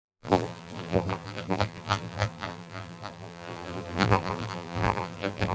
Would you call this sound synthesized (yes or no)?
yes